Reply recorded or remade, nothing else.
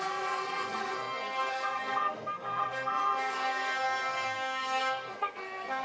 remade